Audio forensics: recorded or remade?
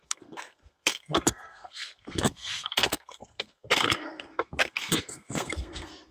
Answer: remade